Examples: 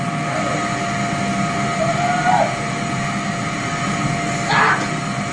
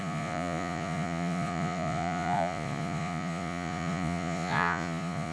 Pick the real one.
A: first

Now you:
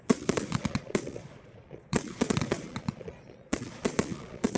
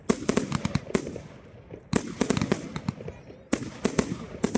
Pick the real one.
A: second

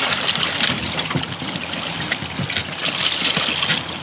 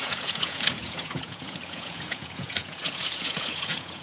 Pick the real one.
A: first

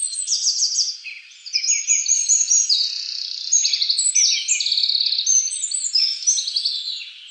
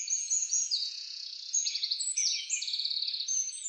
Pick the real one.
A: first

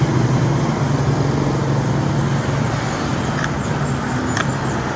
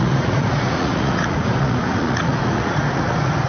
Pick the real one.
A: first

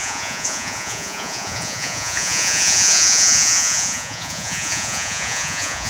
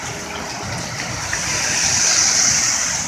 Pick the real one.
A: second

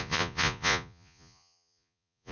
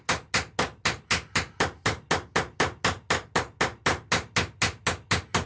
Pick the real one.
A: second